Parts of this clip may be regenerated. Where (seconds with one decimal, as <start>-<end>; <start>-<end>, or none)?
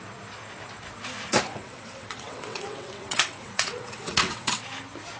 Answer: 1.5-4.6